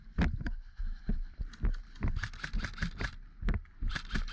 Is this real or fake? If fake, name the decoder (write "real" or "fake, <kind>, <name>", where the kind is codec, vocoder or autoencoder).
real